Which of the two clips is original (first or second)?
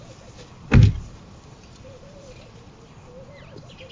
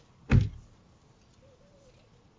second